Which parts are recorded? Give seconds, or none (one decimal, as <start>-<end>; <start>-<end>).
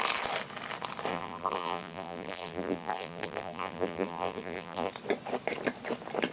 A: 0.0-1.1; 4.9-6.3